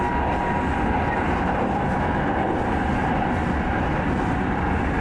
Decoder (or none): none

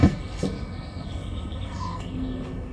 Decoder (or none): codec, SNAC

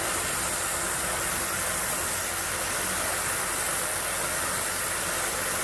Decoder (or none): none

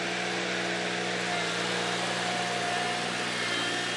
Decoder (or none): none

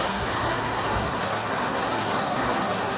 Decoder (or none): codec, SNAC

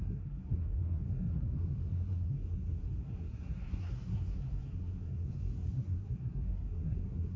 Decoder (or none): codec, SNAC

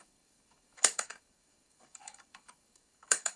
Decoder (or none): codec, DAC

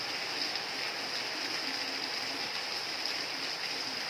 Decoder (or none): none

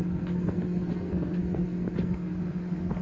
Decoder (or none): codec, SNAC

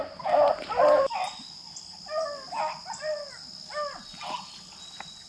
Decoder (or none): none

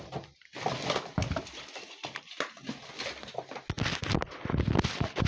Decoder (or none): none